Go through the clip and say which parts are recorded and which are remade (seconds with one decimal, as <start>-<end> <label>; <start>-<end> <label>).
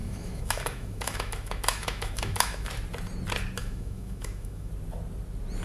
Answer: 0.0-2.7 remade; 2.7-3.6 recorded; 3.6-4.7 remade; 4.7-5.6 recorded